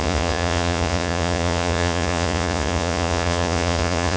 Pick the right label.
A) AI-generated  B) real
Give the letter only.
A